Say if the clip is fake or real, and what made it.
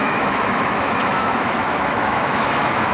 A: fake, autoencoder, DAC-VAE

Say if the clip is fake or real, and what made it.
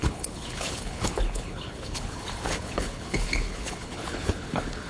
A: fake, codec, HILCodec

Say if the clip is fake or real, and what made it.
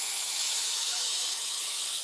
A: fake, autoencoder, DAC-VAE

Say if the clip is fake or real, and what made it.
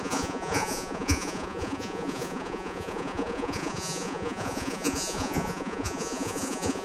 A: fake, vocoder, Vocos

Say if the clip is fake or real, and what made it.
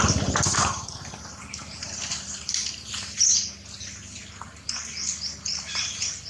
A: real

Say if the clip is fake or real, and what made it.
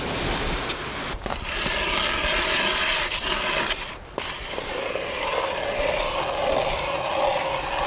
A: real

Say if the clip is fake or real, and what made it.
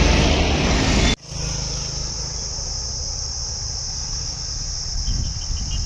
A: real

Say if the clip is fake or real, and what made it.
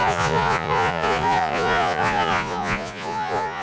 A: fake, vocoder, Vocos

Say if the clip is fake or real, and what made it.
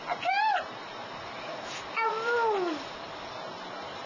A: real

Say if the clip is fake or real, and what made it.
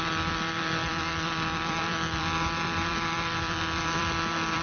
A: fake, vocoder, BigVGAN v2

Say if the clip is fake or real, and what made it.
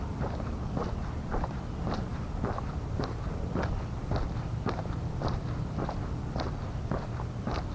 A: fake, vocoder, BigVGAN v2